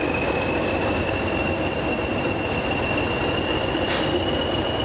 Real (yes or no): yes